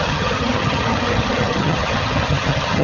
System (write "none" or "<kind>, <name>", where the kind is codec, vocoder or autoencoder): vocoder, HiFi-GAN